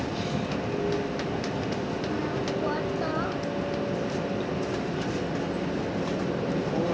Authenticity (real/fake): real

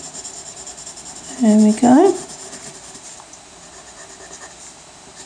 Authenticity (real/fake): real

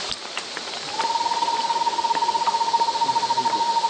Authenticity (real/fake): real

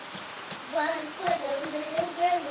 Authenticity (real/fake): fake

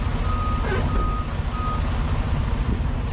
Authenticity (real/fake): real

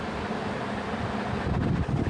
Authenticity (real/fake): real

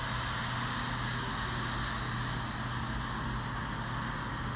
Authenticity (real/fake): real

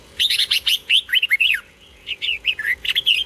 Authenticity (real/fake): fake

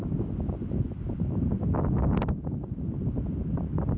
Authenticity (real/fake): real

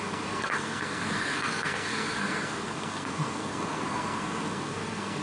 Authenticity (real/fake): fake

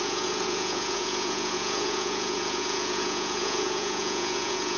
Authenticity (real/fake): fake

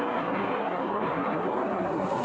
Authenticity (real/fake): fake